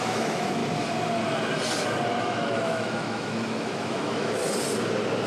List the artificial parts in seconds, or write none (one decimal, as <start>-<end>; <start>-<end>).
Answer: 0.0-0.6; 2.2-4.4